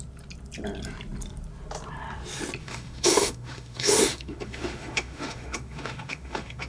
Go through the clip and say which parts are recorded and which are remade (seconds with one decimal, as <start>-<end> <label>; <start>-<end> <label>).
0.0-2.6 recorded; 2.6-6.7 remade